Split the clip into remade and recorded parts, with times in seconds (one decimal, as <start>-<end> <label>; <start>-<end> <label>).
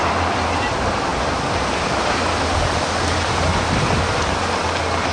0.0-5.1 recorded